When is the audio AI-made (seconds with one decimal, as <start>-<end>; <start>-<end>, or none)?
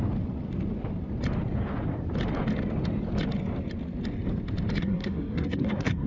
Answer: 4.8-6.1